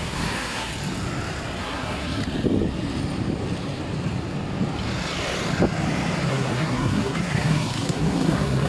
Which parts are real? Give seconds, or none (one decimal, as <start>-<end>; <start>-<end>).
0.7-1.6; 2.2-6.3